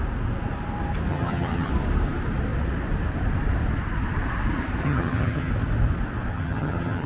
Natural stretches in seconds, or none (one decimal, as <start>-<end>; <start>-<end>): 0.0-1.1; 1.7-4.8; 5.5-6.3